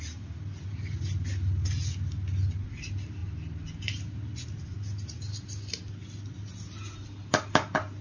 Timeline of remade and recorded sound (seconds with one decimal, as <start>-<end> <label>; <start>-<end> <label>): 0.0-8.0 recorded